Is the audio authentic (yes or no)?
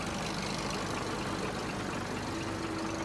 yes